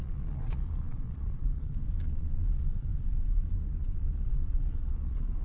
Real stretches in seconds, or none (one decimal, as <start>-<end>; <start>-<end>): none